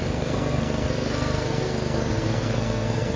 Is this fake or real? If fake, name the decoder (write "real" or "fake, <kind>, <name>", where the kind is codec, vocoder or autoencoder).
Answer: fake, codec, SNAC